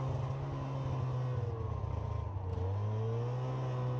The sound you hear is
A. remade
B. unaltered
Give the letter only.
B